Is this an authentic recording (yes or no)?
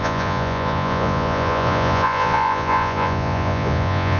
no